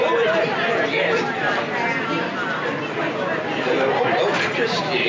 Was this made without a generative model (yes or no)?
yes